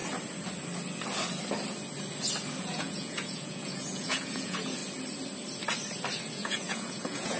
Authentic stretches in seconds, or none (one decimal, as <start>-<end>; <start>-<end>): 0.0-2.6; 4.8-6.3